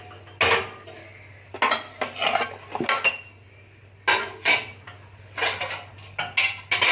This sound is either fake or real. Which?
real